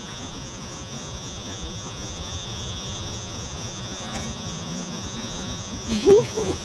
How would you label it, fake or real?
fake